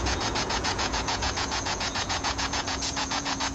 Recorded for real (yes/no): no